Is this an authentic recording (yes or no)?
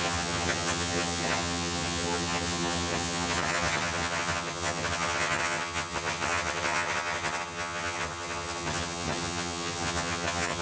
no